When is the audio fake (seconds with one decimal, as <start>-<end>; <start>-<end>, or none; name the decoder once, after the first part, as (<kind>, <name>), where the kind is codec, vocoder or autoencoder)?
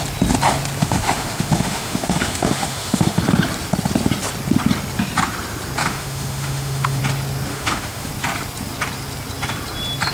0.8-3.2 (autoencoder, DAC-VAE); 5.8-7.0; 7.5-8.1